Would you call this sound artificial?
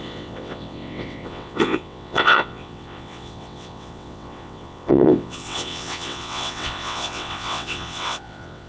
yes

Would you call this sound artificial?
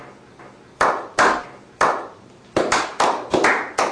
no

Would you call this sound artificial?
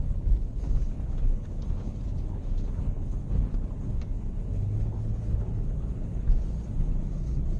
yes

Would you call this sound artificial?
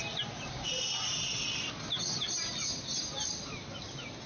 no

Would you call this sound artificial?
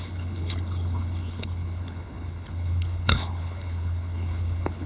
yes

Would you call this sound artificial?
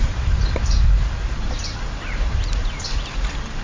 no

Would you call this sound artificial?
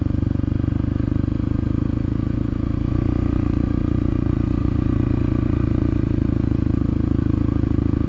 yes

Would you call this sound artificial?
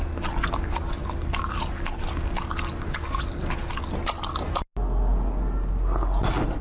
no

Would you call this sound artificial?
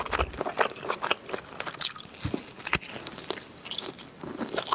no